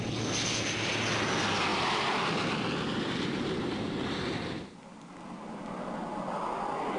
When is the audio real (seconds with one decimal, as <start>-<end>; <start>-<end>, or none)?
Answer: 0.0-1.7; 4.4-7.0